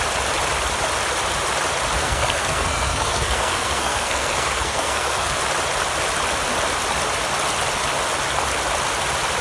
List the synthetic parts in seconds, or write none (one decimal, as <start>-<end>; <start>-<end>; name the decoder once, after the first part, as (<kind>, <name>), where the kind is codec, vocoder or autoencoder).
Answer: 2.0-5.4 (codec, SNAC)